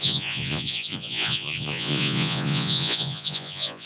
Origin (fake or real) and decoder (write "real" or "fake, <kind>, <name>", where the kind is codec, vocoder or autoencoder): fake, vocoder, Vocos